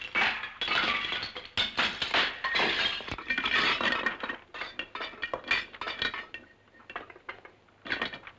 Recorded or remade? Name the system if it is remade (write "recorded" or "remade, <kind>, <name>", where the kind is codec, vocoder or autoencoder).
recorded